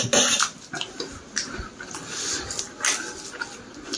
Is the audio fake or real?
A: real